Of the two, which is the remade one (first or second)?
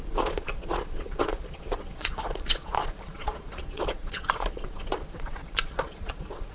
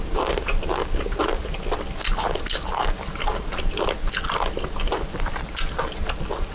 first